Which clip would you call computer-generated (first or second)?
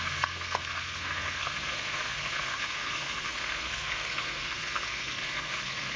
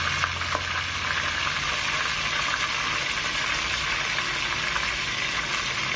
first